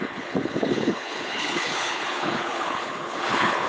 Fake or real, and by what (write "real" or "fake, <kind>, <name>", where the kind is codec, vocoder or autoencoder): fake, codec, HILCodec